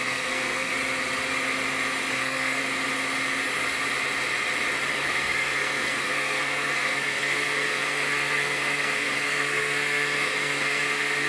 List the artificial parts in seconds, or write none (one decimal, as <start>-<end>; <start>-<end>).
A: 0.0-0.7; 2.1-2.6; 4.9-11.3